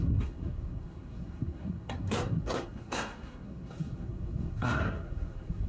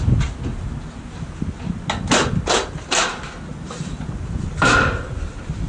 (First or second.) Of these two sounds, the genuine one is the second